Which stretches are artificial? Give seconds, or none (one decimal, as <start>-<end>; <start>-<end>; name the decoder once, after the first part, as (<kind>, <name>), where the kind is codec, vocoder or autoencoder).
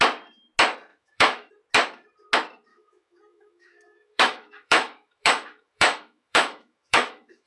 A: 0.9-1.5 (autoencoder, DAC-VAE); 2.7-7.5